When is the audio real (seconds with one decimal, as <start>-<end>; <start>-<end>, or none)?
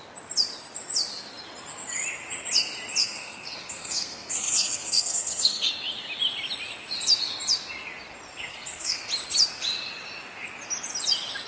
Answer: 0.0-3.0; 5.7-8.5; 9.0-11.5